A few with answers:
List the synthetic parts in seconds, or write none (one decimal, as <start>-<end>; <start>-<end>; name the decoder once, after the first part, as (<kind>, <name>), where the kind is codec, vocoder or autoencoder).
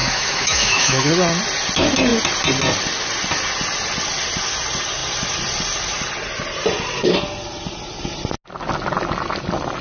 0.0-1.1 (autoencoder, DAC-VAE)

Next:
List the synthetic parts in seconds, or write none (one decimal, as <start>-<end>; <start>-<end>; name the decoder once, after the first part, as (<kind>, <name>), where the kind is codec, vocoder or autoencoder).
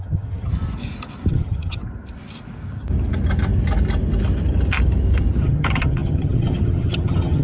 0.0-0.5 (vocoder, HiFi-GAN); 1.3-1.8; 5.4-7.4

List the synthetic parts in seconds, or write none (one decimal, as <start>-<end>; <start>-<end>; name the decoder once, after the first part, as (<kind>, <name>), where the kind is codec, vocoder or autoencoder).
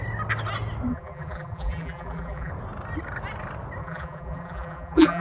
0.9-2.5 (vocoder, BigVGAN v2); 3.8-5.2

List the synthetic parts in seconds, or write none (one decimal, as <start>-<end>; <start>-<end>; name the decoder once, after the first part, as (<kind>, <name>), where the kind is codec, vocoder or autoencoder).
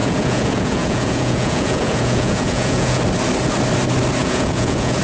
0.0-3.0 (vocoder, Vocos); 4.2-5.0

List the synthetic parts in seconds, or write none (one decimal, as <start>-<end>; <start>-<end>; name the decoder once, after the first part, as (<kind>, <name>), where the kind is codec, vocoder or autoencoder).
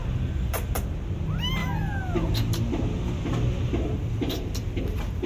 none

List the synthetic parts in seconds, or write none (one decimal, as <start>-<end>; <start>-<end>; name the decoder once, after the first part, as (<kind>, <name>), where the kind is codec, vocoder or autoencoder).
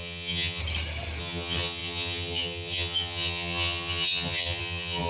0.0-0.6 (vocoder, HiFi-GAN); 1.2-5.1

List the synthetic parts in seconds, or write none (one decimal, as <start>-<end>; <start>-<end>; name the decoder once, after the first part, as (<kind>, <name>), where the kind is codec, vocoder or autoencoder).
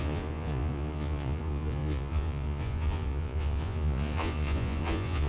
0.0-5.3 (vocoder, Vocos)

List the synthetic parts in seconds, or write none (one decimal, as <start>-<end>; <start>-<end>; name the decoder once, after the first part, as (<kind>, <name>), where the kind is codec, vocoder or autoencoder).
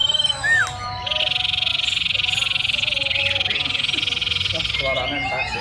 none